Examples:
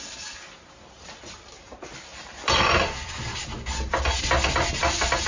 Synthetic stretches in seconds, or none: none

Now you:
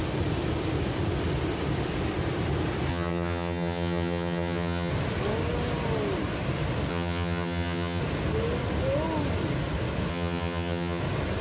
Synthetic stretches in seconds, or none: 2.9-4.9 (vocoder, HiFi-GAN); 6.9-8.0; 10.1-11.0

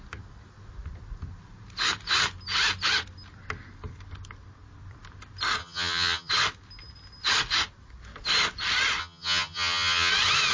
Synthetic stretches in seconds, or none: 5.6-6.3 (vocoder, HiFi-GAN); 9.0-10.1

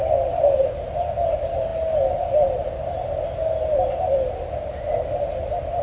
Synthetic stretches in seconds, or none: none